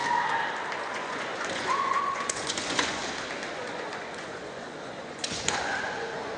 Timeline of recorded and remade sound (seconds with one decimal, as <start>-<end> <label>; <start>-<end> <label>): 0.0-0.8 recorded; 0.8-3.0 remade; 3.0-3.5 recorded; 3.5-6.4 remade